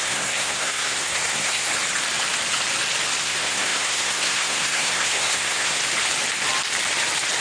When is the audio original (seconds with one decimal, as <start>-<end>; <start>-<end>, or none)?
1.7-3.2; 5.8-7.4